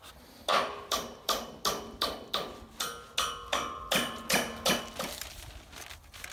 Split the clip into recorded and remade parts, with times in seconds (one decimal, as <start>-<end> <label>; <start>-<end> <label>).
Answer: 0.0-0.5 recorded; 0.5-1.5 remade; 1.5-6.3 recorded